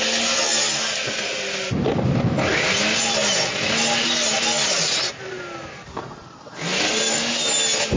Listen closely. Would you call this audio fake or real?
real